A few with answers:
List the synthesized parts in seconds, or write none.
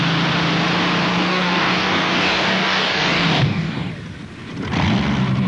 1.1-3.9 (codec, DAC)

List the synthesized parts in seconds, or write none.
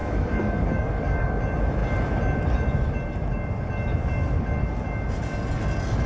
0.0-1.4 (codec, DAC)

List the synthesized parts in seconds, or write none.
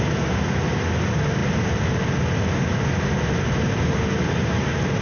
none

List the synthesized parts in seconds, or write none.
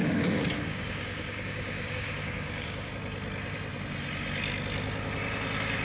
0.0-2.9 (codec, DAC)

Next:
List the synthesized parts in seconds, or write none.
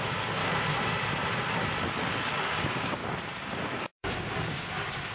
0.0-0.4 (codec, DAC); 2.4-3.0; 3.8-5.1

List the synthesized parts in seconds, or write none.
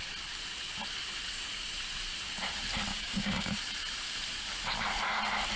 2.9-3.6 (codec, DAC)